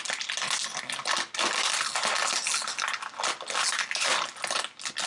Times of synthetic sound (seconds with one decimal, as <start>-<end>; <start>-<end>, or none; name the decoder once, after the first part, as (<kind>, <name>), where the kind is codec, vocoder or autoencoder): none